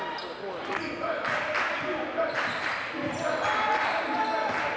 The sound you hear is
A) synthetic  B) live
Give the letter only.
B